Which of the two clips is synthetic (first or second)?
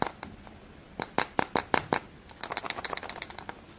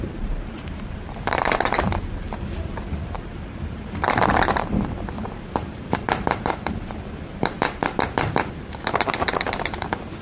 second